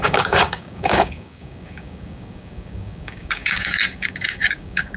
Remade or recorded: remade